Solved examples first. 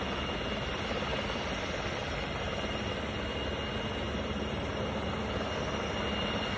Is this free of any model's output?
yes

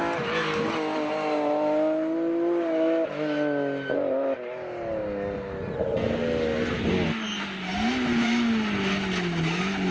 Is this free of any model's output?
yes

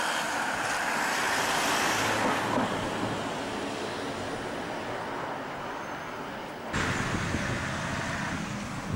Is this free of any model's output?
yes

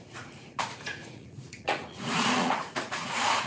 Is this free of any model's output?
no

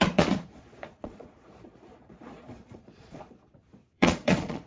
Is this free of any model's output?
no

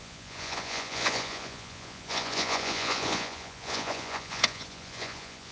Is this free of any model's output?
no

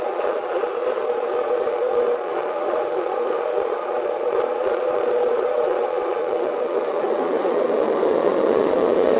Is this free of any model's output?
no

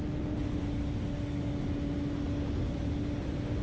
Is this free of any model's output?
yes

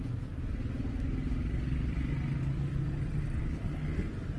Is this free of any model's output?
yes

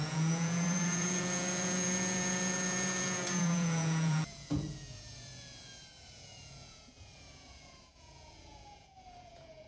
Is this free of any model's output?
no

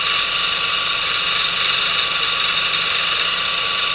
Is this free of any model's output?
yes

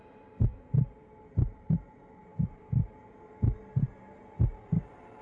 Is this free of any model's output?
yes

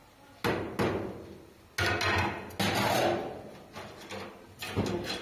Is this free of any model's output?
yes